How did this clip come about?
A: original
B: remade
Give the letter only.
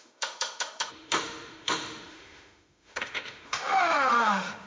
B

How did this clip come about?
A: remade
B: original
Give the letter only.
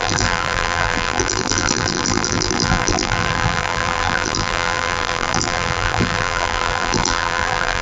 A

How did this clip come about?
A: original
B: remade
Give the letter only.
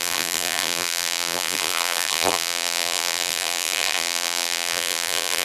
B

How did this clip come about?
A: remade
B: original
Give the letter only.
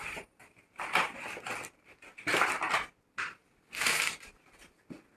B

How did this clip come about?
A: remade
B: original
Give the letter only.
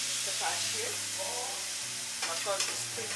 B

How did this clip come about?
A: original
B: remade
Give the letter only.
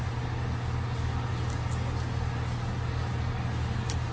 A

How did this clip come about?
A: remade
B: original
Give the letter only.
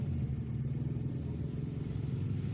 B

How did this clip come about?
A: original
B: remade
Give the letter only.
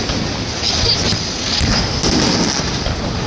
A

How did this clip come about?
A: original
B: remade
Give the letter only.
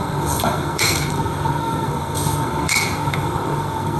B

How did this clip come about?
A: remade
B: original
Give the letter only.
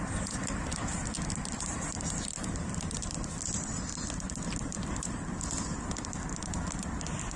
B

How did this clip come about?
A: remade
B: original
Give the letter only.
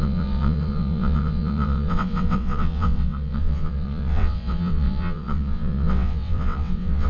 A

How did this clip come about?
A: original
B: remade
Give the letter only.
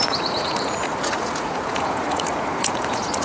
B